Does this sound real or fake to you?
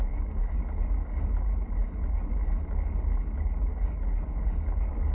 real